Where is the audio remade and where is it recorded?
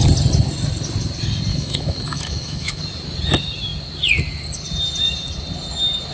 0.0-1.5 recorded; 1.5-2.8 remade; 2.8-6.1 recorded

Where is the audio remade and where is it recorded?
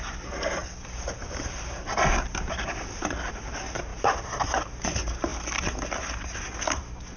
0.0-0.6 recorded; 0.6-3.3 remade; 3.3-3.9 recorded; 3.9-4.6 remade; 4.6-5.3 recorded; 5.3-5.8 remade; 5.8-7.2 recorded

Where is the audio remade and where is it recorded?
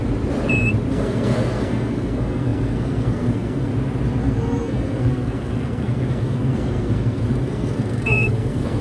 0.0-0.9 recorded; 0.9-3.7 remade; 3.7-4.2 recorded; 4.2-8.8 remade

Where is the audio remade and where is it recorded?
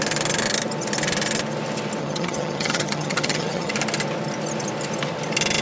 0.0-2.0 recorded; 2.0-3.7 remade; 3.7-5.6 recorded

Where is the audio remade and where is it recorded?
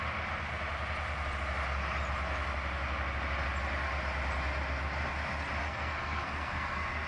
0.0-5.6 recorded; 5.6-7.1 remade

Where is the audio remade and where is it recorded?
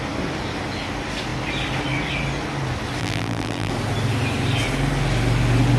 0.0-3.0 recorded; 3.0-3.7 remade; 3.7-5.8 recorded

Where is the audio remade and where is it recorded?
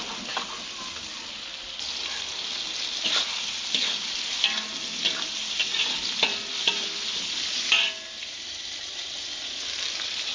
0.0-10.3 recorded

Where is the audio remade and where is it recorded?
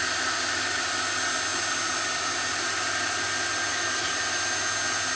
0.0-5.2 recorded